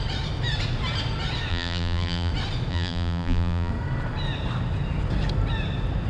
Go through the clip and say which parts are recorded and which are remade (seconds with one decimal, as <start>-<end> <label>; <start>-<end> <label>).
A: 0.0-1.5 recorded; 1.5-2.3 remade; 2.3-2.7 recorded; 2.7-3.7 remade; 3.7-6.1 recorded